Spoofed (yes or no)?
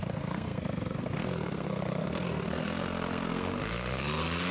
yes